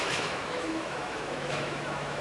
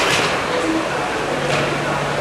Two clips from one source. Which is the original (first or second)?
second